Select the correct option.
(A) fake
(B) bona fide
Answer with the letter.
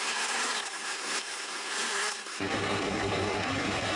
A